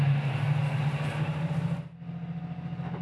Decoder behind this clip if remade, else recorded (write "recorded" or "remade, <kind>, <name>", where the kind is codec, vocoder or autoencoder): recorded